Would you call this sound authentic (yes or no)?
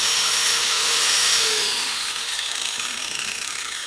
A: no